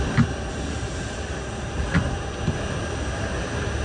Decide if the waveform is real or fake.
real